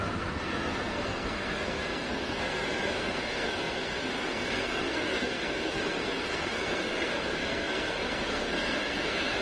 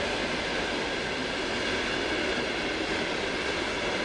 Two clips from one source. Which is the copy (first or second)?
first